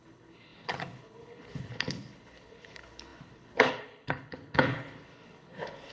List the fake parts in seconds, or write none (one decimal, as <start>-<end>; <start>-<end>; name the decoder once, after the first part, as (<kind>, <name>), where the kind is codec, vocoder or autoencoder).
0.0-5.9 (codec, HILCodec)

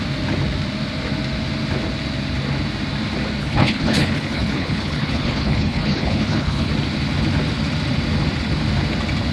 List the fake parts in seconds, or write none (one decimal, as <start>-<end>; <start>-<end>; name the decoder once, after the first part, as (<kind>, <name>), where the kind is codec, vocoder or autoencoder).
3.4-6.7 (codec, HILCodec)

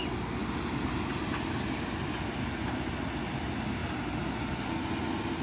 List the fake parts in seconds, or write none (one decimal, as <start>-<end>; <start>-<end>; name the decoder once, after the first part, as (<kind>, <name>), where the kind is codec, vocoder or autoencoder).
none

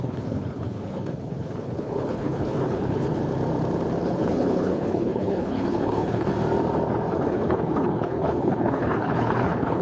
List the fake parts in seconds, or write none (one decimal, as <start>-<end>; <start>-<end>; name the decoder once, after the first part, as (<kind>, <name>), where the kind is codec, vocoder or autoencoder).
0.0-3.2 (codec, HILCodec); 4.0-6.3; 7.1-9.8

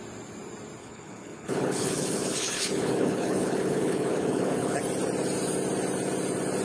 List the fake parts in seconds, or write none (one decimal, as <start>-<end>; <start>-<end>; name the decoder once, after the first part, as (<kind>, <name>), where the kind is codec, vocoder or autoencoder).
0.8-4.8 (codec, HILCodec)

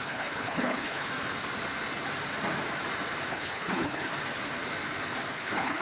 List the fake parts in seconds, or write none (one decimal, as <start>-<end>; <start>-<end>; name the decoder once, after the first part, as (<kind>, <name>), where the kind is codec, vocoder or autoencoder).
0.0-1.1 (codec, HILCodec); 3.3-4.1; 5.3-5.8

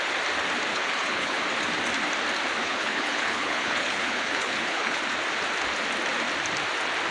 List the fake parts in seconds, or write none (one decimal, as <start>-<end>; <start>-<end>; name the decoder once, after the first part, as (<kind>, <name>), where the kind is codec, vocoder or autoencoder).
0.7-1.4 (codec, HILCodec); 2.6-5.0

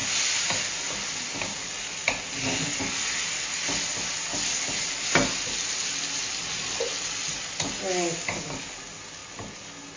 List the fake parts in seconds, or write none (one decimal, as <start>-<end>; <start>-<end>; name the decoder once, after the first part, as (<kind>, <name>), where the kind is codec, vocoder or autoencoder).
none